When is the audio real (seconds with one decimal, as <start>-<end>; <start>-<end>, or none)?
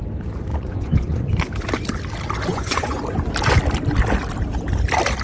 0.0-0.5; 1.3-2.5; 3.0-5.2